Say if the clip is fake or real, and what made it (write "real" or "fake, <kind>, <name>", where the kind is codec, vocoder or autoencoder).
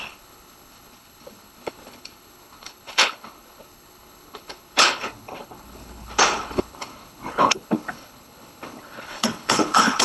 fake, codec, HILCodec